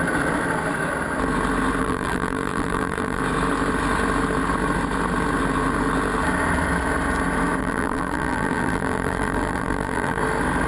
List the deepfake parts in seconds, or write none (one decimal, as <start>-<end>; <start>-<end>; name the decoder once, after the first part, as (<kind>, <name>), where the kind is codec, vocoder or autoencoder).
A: 1.8-3.2 (vocoder, BigVGAN v2); 7.6-10.2